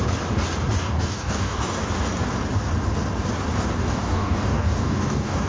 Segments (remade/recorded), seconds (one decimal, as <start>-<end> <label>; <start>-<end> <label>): 0.0-0.8 recorded; 0.8-1.8 remade; 1.8-3.9 recorded; 3.9-5.5 remade